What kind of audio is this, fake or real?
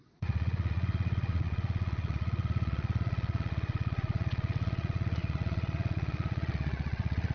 fake